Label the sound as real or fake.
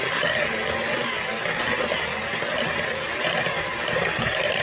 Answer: real